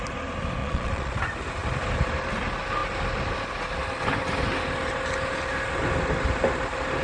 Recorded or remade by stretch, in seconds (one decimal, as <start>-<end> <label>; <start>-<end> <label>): 0.0-0.6 recorded; 0.6-1.1 remade; 1.1-7.0 recorded